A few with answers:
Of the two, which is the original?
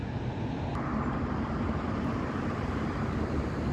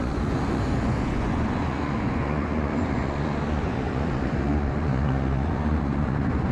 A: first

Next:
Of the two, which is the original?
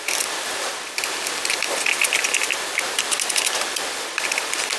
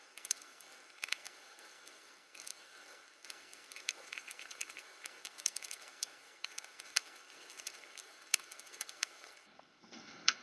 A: first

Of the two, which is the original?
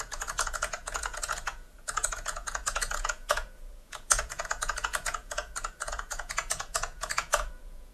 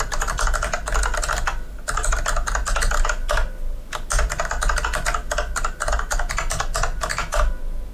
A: second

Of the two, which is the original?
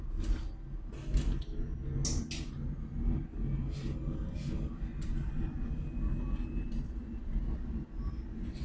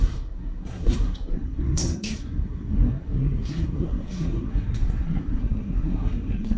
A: first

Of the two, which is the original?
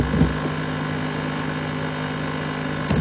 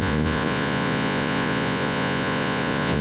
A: first